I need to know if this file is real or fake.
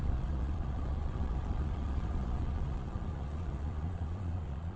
fake